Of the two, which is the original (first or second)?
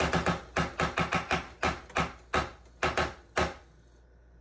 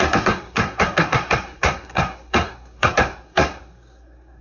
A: first